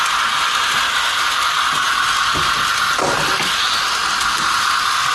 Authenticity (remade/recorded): recorded